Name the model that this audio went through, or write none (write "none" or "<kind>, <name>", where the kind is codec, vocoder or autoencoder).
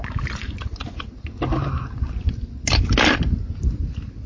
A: none